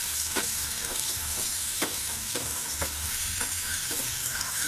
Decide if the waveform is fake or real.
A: fake